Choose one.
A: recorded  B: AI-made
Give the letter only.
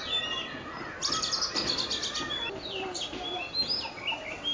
A